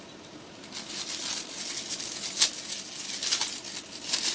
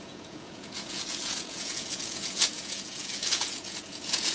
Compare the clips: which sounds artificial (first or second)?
second